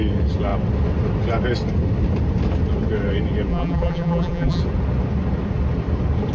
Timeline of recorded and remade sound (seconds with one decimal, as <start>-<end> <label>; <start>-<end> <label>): 0.0-3.5 recorded; 3.5-4.6 remade; 4.6-6.3 recorded